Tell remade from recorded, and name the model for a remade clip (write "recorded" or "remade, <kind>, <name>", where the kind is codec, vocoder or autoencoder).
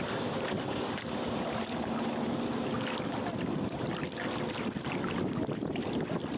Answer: recorded